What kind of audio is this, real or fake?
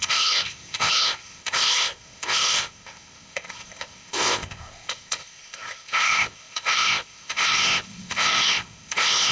fake